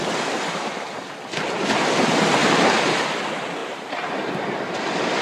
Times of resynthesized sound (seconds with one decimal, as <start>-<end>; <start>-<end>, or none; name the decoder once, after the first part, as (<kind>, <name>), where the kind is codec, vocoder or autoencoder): 2.4-3.0 (vocoder, BigVGAN v2); 3.6-4.8